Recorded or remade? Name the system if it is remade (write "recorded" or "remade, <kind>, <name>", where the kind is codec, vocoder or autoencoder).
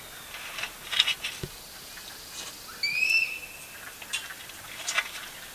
recorded